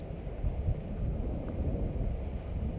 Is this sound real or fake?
real